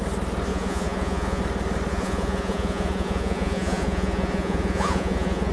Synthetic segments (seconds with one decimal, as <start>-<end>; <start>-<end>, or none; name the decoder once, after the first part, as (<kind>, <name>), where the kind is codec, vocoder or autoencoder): 0.5-1.4 (vocoder, Vocos); 1.9-5.5